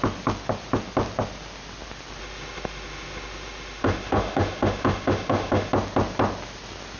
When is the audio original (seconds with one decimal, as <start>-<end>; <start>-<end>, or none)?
0.0-2.2; 5.7-7.0